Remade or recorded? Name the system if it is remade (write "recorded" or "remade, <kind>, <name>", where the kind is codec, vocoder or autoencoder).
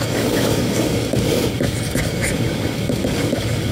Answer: remade, codec, DAC